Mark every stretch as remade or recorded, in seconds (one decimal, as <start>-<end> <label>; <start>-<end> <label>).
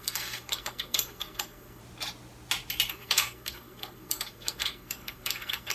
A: 0.0-1.8 remade; 1.8-2.9 recorded; 2.9-5.7 remade